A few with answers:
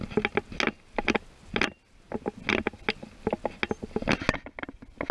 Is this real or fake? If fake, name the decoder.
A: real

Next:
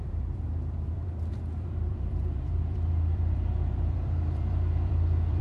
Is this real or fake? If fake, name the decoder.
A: fake, vocoder, BigVGAN v2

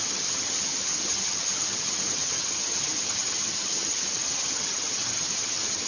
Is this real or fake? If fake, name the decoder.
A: fake, vocoder, HiFi-GAN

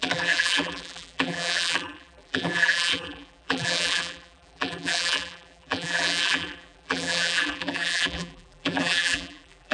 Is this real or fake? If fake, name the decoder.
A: fake, vocoder, BigVGAN v2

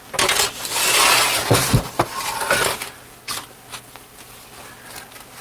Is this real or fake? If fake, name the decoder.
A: real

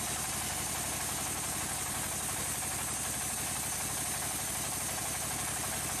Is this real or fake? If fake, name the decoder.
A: real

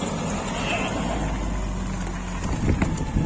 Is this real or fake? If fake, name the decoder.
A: real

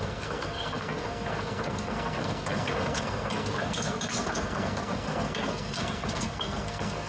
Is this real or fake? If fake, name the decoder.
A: fake, codec, SNAC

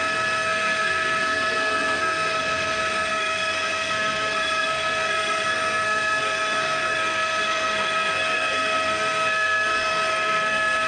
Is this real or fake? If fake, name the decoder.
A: fake, codec, SNAC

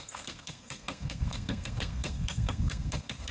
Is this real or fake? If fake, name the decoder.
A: fake, codec, SNAC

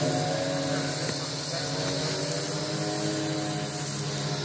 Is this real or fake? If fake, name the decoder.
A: real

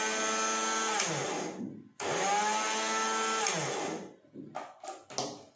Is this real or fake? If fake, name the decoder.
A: real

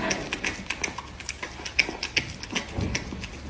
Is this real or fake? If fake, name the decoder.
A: real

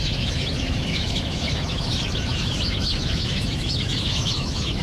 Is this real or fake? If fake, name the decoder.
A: fake, autoencoder, DAC-VAE